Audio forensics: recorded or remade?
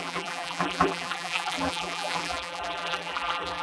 remade